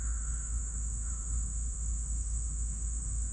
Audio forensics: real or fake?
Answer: fake